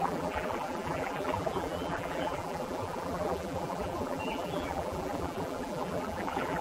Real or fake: fake